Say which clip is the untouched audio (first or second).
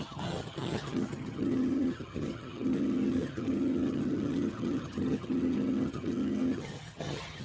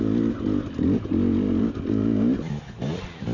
second